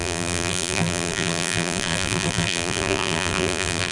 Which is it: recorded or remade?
remade